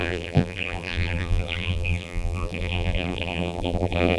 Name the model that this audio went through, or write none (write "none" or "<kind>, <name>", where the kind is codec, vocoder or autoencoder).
vocoder, BigVGAN v2